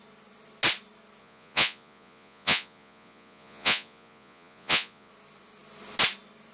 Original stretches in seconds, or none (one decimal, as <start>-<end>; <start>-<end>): 0.0-1.2; 5.1-6.5